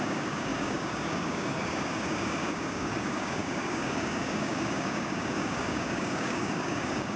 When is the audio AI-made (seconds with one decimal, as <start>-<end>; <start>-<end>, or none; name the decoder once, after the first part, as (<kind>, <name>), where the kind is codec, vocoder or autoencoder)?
0.0-7.2 (codec, DAC)